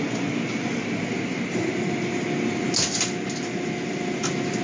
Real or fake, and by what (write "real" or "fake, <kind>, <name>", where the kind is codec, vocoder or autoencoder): real